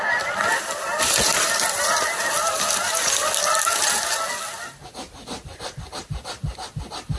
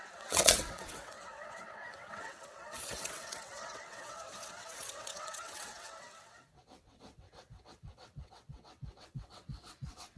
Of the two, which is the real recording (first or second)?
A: first